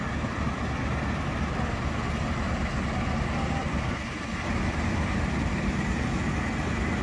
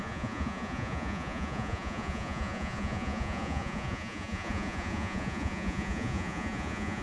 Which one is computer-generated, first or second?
second